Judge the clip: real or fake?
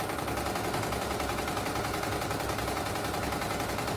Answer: real